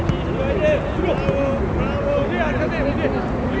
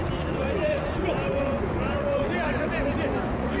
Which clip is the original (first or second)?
first